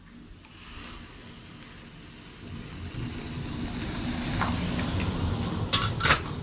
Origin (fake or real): real